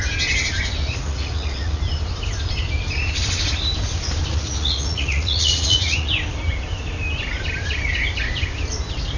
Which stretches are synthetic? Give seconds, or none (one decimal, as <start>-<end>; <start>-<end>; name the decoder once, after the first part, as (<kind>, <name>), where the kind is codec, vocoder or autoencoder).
0.8-1.8 (vocoder, Vocos); 4.3-6.1